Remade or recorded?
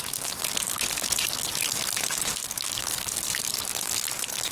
remade